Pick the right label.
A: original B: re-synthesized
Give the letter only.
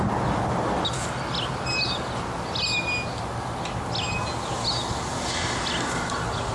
A